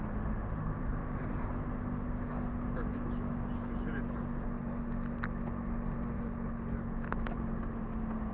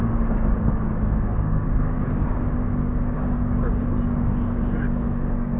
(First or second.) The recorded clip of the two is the first